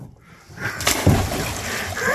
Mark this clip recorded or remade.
recorded